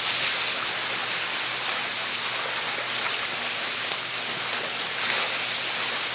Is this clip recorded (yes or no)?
yes